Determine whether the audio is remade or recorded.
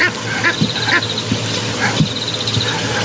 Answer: recorded